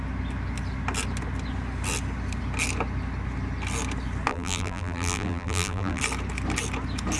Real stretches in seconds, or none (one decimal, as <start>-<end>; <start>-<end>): 0.0-4.3; 6.0-7.2